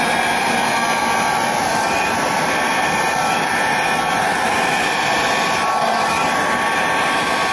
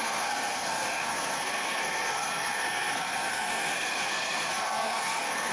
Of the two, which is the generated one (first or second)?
second